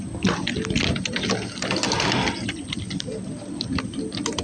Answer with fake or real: real